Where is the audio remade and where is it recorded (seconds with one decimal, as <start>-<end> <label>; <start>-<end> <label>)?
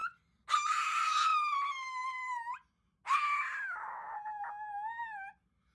0.0-5.7 recorded